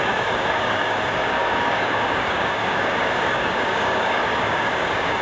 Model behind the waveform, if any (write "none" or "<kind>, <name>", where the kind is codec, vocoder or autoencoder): codec, DAC